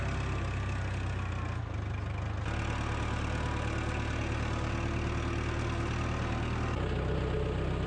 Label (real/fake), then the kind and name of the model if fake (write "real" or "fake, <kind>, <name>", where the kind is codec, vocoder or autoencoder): real